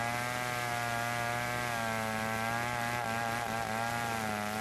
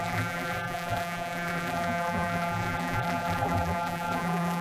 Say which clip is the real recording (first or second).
first